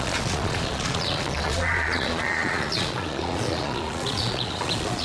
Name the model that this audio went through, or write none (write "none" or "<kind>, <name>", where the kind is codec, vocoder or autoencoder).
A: vocoder, Vocos